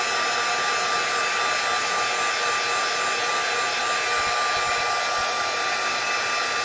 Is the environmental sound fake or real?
real